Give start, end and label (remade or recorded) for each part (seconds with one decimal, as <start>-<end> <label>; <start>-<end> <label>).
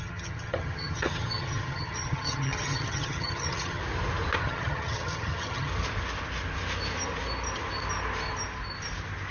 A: 0.0-3.8 remade; 3.8-4.4 recorded; 4.4-5.7 remade; 5.7-9.3 recorded